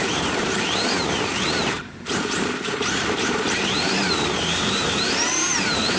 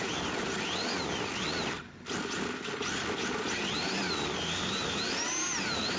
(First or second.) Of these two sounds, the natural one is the second